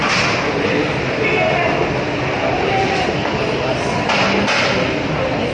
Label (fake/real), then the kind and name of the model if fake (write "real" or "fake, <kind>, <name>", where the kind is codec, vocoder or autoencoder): real